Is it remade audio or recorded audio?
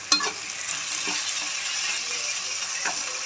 recorded